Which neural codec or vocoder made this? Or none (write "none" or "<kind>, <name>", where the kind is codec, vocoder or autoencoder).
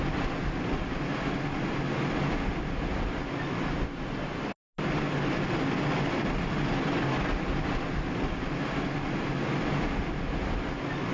none